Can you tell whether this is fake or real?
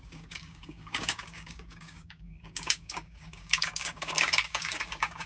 fake